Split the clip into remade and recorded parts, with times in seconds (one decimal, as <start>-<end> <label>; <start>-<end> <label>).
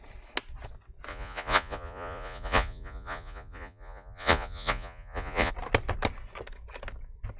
0.0-1.1 recorded; 1.1-5.5 remade; 5.5-7.4 recorded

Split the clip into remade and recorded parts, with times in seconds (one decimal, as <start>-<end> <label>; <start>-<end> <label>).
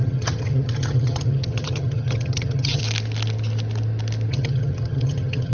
0.0-2.8 remade; 2.8-4.3 recorded; 4.3-5.5 remade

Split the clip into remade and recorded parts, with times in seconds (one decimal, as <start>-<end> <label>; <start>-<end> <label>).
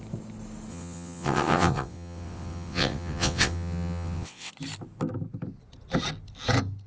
0.0-0.7 recorded; 0.7-4.5 remade; 4.5-6.9 recorded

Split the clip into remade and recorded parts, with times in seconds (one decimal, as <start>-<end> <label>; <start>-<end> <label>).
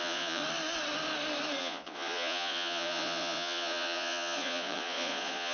0.0-0.4 remade; 0.4-1.6 recorded; 1.6-5.5 remade